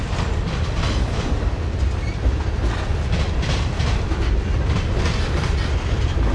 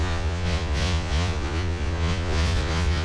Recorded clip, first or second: first